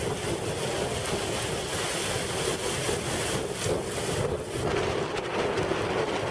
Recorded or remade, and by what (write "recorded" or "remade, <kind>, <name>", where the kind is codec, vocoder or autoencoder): recorded